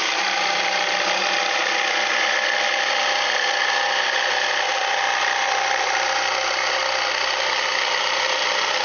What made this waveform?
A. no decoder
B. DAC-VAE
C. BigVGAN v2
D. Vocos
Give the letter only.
C